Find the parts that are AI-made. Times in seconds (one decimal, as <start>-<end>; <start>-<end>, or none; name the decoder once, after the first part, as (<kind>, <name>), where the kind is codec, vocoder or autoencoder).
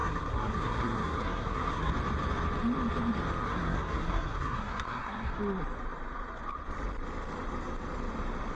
0.0-1.9 (codec, SNAC); 3.4-5.4